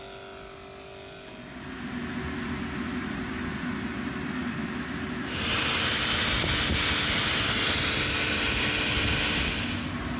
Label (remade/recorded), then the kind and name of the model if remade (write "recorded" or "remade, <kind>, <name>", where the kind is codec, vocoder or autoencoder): recorded